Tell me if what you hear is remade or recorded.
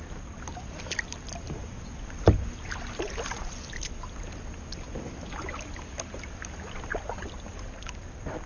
recorded